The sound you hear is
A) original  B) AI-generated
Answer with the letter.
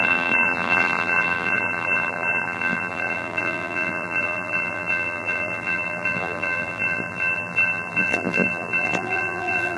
B